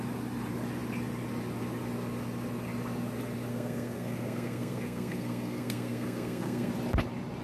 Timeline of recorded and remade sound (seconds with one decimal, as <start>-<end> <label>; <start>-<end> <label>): 0.0-3.5 recorded; 3.5-6.7 remade; 6.7-7.4 recorded